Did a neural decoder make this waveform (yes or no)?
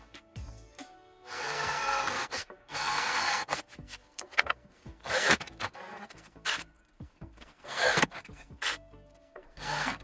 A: yes